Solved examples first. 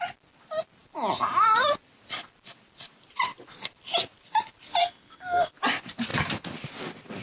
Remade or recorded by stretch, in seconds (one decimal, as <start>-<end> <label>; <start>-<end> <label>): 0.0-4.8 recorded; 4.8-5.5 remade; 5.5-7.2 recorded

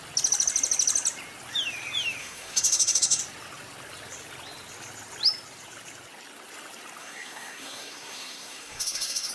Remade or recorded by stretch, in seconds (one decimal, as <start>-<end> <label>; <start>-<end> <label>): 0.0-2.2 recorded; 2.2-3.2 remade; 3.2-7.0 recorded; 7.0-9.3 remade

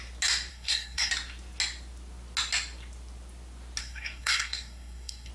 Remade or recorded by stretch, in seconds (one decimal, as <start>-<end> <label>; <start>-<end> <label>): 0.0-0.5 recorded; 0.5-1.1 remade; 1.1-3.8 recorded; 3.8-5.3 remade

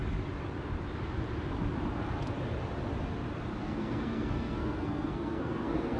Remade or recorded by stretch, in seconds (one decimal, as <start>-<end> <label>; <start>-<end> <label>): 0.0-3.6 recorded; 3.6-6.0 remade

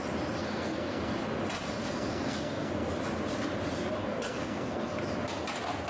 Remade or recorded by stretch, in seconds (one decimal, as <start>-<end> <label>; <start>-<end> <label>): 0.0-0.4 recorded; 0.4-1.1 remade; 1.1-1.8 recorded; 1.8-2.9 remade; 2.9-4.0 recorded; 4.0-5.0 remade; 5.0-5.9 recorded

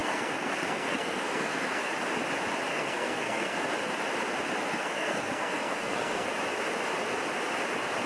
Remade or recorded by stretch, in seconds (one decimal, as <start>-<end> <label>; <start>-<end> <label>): 0.0-1.9 remade; 1.9-2.7 recorded; 2.7-3.7 remade; 3.7-4.7 recorded; 4.7-6.3 remade; 6.3-8.1 recorded

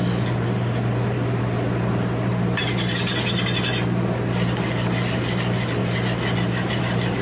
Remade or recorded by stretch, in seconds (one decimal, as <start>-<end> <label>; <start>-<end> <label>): 0.0-7.2 recorded